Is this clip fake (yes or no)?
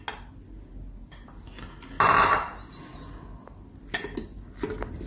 no